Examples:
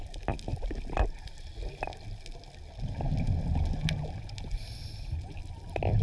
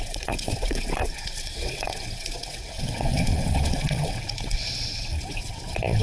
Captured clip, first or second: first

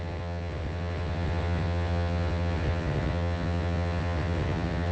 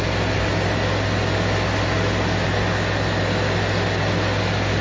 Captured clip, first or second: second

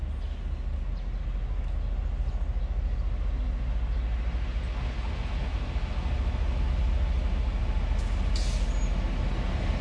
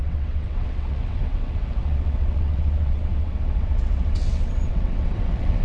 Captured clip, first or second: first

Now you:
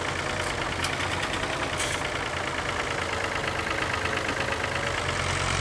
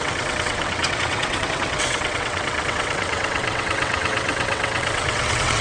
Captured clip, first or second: first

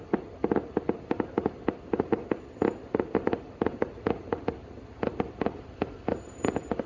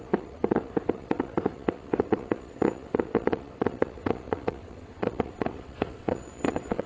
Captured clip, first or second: first